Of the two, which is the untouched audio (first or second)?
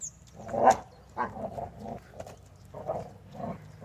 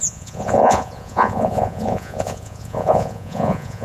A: first